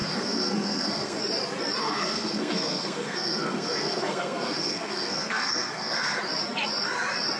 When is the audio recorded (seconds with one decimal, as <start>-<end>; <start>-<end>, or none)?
1.2-1.8; 6.2-7.4